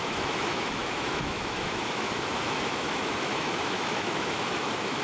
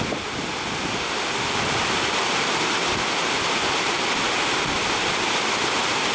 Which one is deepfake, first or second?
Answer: first